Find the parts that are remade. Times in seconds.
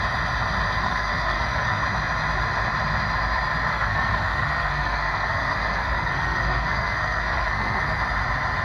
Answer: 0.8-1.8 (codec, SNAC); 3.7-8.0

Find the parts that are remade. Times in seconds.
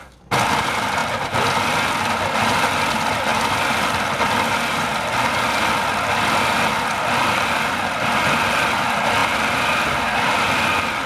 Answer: none